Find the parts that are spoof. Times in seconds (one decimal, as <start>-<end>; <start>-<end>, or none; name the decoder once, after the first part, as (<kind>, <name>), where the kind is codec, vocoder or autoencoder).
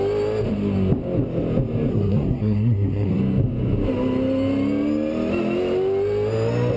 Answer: 1.9-3.2 (codec, SNAC)